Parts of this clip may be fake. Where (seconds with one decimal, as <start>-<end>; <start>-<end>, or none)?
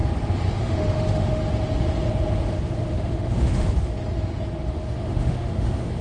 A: 0.6-1.4; 2.6-4.0; 4.7-6.0